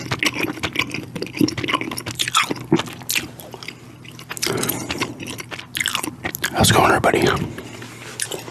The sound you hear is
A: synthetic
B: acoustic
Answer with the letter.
B